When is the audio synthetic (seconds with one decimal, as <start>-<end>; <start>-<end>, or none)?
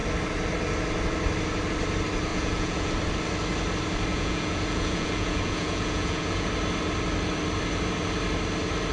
2.3-2.9; 4.1-6.5